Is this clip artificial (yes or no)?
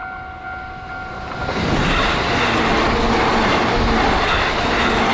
no